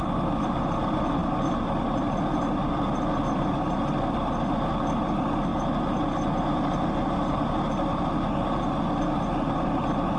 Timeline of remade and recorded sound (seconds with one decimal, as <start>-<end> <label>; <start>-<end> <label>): 0.0-10.2 recorded